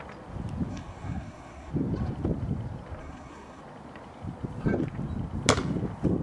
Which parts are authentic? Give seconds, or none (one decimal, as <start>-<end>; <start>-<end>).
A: 0.0-0.7; 1.7-3.0; 3.6-6.2